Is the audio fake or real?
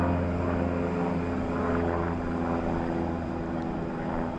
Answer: real